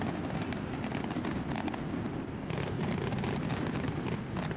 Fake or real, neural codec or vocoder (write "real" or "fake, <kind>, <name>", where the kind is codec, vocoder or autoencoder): real